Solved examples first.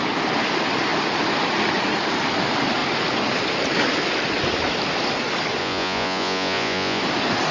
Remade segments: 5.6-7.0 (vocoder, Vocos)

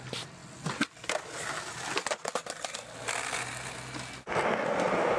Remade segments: none

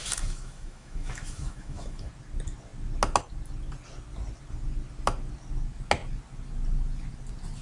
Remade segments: 0.0-2.1 (autoencoder, DAC-VAE)